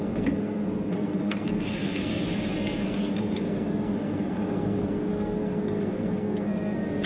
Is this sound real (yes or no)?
no